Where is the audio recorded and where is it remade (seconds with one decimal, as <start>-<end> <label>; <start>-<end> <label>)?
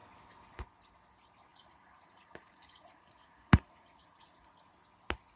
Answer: 0.0-1.5 recorded; 1.5-4.7 remade; 4.7-5.4 recorded